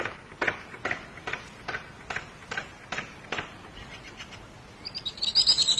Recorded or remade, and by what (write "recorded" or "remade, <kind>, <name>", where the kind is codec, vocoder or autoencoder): recorded